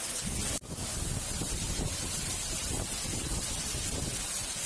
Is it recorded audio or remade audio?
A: recorded